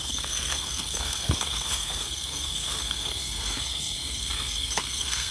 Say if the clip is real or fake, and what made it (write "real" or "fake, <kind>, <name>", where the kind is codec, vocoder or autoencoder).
fake, codec, SNAC